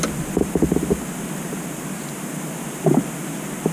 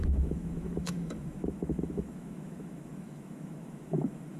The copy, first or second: second